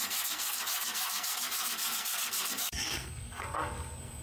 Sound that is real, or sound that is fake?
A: fake